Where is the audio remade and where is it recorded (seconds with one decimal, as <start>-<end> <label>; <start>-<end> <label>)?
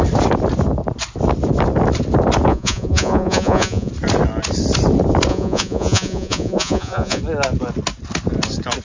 0.0-2.5 recorded; 2.5-3.9 remade; 3.9-5.3 recorded; 5.3-7.2 remade; 7.2-8.8 recorded